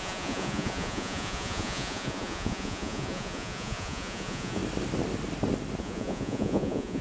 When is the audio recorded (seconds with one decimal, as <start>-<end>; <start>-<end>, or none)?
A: 4.6-5.8